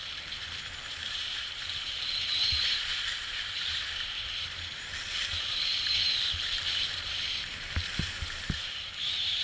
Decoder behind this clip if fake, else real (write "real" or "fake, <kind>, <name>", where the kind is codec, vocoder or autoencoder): fake, vocoder, BigVGAN v2